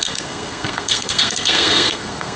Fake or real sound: fake